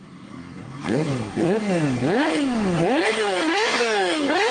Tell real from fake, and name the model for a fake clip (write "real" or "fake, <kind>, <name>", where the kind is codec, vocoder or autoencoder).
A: fake, codec, SNAC